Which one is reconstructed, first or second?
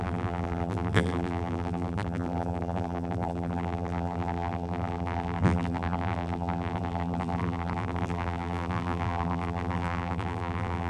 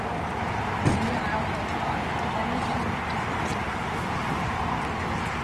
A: first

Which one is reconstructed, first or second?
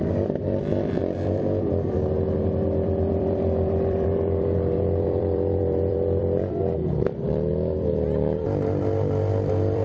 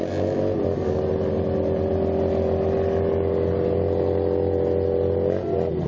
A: first